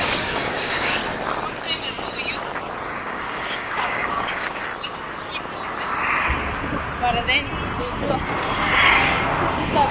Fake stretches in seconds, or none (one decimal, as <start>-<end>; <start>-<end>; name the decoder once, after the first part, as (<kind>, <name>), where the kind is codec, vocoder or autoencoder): 0.0-1.0 (codec, DAC); 2.9-4.6